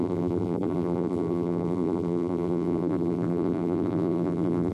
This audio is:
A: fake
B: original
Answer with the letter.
A